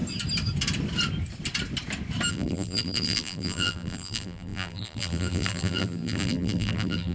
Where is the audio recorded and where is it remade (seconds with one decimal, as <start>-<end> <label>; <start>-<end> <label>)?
0.0-2.3 recorded; 2.3-7.1 remade